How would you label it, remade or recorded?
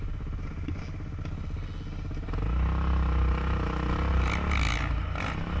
recorded